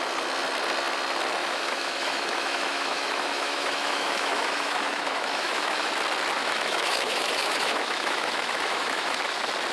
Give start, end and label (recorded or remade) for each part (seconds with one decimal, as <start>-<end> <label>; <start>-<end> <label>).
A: 0.0-1.4 recorded; 1.4-5.9 remade; 5.9-6.4 recorded; 6.4-9.2 remade; 9.2-9.7 recorded